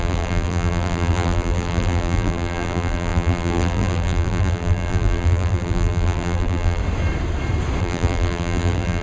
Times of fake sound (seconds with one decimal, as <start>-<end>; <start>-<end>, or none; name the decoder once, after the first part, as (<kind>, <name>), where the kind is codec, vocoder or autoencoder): 0.0-6.8 (vocoder, BigVGAN v2); 7.8-9.0